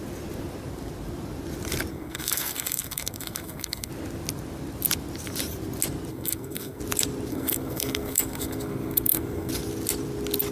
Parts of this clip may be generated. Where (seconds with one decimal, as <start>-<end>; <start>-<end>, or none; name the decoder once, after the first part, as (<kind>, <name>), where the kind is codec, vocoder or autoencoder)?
1.9-3.9 (codec, SNAC); 6.1-6.8; 7.3-9.5